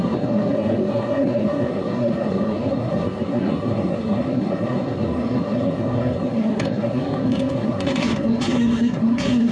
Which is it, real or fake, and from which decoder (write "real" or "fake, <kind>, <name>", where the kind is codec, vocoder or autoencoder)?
fake, codec, SNAC